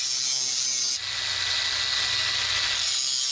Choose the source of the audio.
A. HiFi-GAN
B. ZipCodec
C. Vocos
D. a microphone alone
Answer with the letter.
D